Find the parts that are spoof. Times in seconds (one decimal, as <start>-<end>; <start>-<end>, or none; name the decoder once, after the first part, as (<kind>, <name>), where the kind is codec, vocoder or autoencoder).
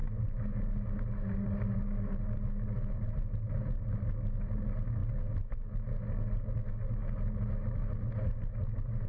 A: none